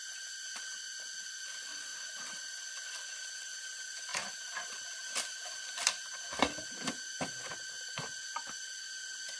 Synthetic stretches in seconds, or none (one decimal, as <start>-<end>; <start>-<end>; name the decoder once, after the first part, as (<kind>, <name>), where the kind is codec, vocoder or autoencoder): none